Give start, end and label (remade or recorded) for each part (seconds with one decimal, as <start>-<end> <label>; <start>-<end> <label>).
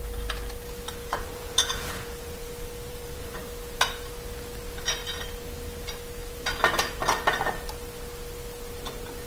0.0-1.0 recorded; 1.0-2.5 remade; 2.5-2.9 recorded; 2.9-3.4 remade; 3.4-9.3 recorded